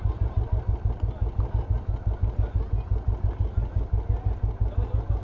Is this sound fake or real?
real